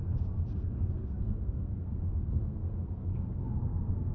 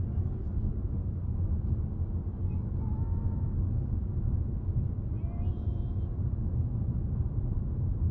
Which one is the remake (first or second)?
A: first